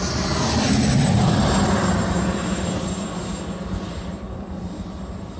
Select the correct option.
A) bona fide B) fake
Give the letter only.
A